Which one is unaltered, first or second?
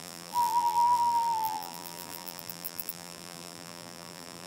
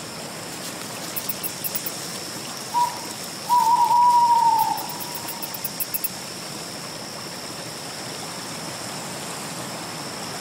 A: second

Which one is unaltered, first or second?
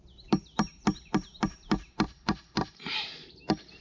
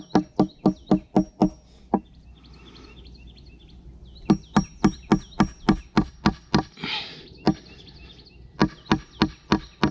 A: second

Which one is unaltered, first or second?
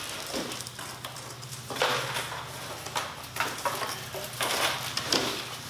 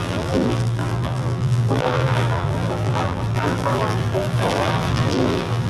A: first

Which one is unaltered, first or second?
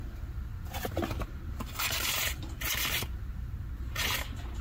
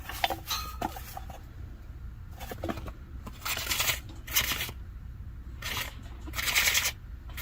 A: second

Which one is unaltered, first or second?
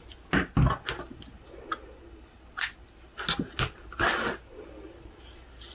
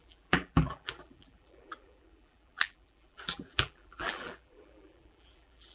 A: first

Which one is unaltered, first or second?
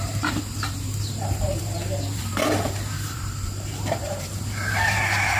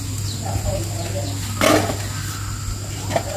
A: second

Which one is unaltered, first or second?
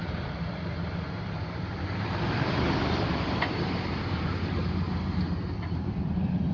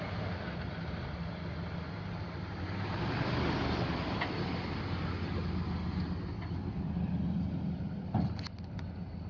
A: second